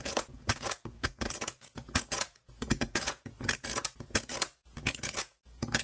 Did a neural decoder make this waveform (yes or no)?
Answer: yes